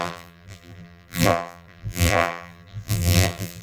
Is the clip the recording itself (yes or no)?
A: no